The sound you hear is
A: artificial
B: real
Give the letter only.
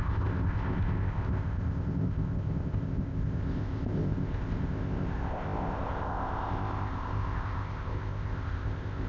A